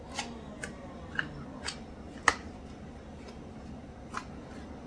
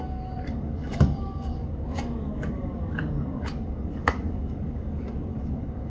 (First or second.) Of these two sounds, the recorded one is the first